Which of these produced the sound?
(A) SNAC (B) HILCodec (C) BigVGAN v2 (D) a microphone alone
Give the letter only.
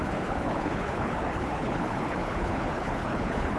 B